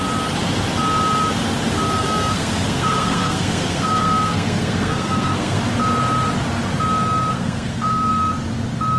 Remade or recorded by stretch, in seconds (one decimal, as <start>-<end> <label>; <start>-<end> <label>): 0.0-2.0 recorded; 2.0-5.6 remade; 5.6-7.3 recorded; 7.3-8.1 remade; 8.1-9.0 recorded